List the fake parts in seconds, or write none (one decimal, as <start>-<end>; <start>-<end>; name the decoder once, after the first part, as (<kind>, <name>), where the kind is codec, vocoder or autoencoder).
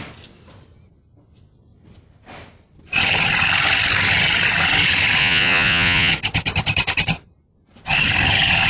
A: 5.2-6.1 (vocoder, Vocos)